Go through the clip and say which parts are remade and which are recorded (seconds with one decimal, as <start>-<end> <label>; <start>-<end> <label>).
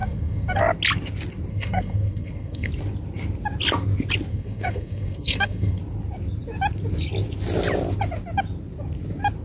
0.0-0.6 remade; 0.6-1.5 recorded; 1.5-2.7 remade; 2.7-4.3 recorded; 4.3-5.8 remade; 5.8-9.4 recorded